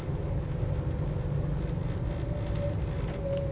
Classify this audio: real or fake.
real